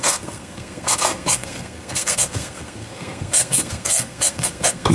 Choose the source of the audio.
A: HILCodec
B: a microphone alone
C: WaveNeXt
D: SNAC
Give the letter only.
D